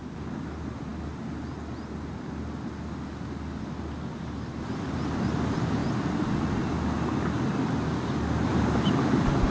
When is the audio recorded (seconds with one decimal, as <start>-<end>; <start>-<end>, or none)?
0.0-9.5